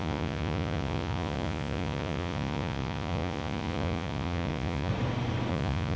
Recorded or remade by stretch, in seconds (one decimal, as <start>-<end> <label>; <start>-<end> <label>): 0.0-4.9 remade; 4.9-5.5 recorded; 5.5-6.0 remade

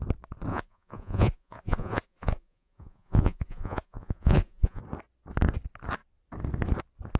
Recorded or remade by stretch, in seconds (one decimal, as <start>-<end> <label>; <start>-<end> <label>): 0.0-0.5 recorded; 0.5-4.8 remade; 4.8-7.2 recorded

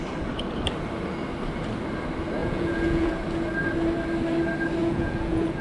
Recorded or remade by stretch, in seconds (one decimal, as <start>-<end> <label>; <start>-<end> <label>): 0.0-2.4 recorded; 2.4-3.1 remade; 3.1-4.8 recorded; 4.8-5.6 remade

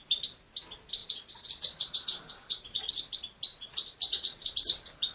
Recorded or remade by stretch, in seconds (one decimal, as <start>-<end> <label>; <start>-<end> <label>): 0.0-1.0 recorded; 1.0-2.9 remade; 2.9-3.5 recorded; 3.5-4.5 remade; 4.5-5.1 recorded

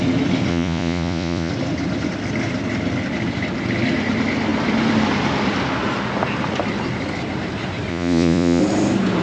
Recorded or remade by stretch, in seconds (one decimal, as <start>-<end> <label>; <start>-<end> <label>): 0.0-0.5 recorded; 0.5-1.5 remade; 1.5-7.9 recorded; 7.9-8.6 remade; 8.6-9.2 recorded